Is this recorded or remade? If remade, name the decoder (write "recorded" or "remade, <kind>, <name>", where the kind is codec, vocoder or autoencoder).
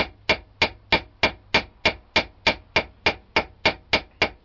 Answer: recorded